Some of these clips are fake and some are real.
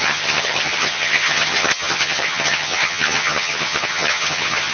fake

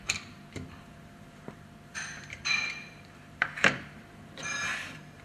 fake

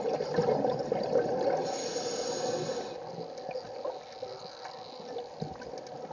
real